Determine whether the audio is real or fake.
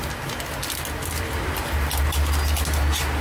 real